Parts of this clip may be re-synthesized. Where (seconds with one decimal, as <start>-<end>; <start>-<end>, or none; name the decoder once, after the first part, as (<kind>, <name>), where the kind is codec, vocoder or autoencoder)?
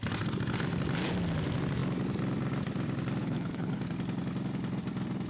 3.2-3.8 (codec, HILCodec)